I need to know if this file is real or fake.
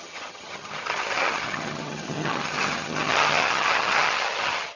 fake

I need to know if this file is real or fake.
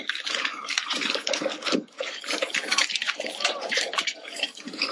fake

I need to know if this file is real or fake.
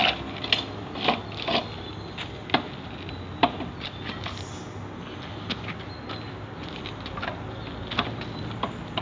real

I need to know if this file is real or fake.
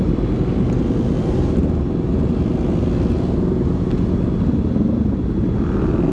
real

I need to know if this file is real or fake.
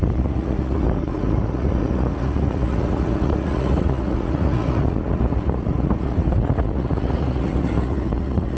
fake